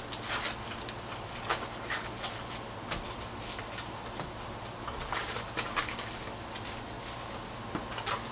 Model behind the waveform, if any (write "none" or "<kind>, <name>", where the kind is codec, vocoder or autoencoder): none